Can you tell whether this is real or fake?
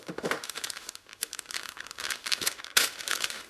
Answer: fake